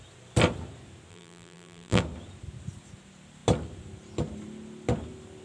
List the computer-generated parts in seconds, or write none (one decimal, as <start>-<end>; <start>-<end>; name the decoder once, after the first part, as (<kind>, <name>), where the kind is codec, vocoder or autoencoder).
1.1-2.0 (vocoder, BigVGAN v2)

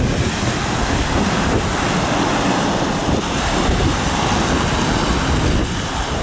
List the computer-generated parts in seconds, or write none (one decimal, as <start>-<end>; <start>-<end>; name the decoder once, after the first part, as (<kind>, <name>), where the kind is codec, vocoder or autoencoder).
none

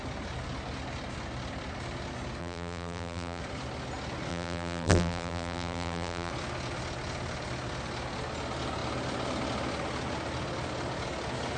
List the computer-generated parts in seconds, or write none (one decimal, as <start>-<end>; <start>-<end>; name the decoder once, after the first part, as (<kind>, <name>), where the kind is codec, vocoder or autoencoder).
2.4-3.4 (vocoder, BigVGAN v2); 4.3-6.3

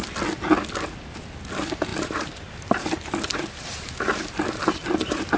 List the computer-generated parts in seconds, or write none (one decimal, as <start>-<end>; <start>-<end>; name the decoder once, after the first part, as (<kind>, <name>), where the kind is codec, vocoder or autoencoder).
1.9-5.4 (vocoder, BigVGAN v2)